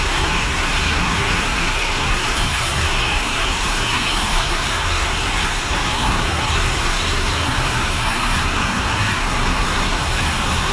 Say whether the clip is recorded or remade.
remade